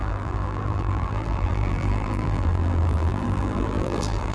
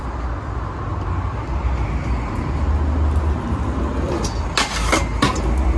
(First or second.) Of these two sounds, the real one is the second